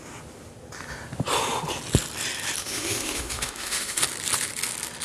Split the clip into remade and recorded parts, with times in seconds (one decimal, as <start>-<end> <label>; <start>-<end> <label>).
0.0-2.6 recorded; 2.6-4.0 remade; 4.0-5.0 recorded